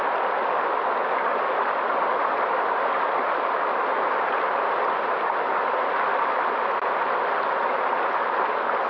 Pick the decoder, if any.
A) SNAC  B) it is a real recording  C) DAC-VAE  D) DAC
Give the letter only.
B